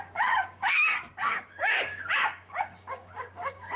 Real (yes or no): no